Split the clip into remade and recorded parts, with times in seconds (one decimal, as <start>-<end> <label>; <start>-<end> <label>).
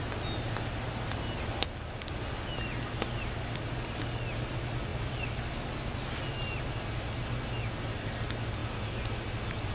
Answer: 0.0-9.7 recorded